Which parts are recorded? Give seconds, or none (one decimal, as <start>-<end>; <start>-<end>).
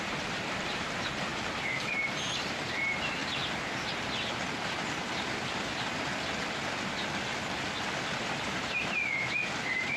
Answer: 1.3-1.9; 3.2-8.4